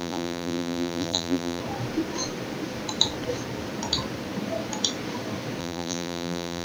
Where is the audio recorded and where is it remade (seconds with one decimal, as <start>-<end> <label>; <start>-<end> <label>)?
0.0-1.6 remade; 1.6-5.6 recorded; 5.6-6.6 remade